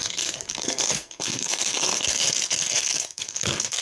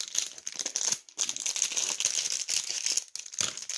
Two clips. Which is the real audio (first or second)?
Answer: second